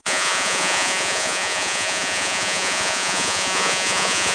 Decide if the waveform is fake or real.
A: fake